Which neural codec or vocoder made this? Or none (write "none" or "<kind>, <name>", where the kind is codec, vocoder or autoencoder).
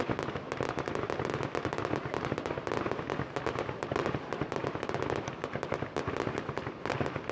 none